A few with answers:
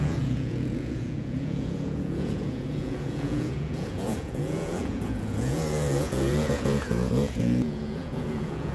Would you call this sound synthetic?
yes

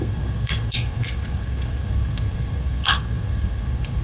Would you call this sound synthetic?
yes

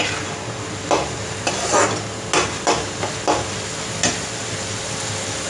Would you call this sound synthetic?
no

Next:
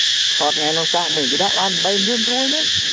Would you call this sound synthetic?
yes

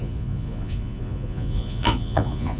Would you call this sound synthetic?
yes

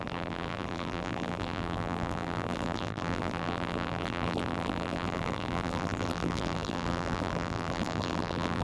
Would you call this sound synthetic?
yes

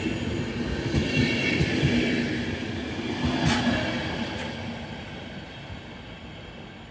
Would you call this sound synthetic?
no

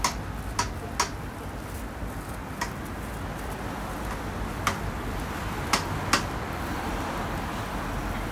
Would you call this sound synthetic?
no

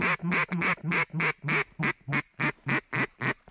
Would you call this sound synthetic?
no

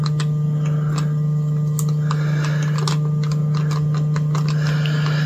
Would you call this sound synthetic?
no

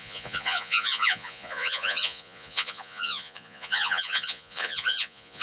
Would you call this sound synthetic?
yes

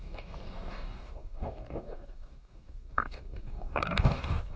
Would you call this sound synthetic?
yes